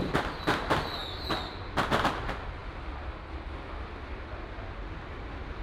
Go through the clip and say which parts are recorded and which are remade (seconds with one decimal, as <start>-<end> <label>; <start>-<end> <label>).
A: 0.0-5.6 recorded